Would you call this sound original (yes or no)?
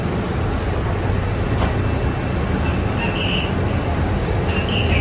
yes